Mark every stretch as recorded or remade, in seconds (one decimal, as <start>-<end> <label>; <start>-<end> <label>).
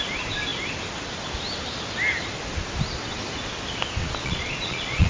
0.0-4.0 recorded; 4.0-5.1 remade